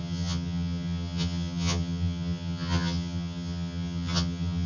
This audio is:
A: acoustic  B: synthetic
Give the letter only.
B